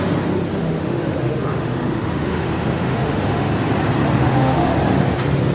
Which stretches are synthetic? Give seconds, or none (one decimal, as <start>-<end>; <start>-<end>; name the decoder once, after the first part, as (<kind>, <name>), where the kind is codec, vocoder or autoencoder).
0.5-3.5 (autoencoder, DAC-VAE); 4.2-4.7